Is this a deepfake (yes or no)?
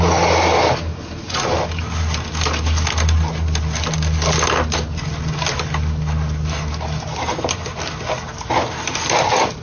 no